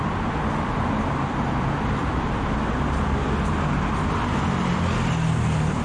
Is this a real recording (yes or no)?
yes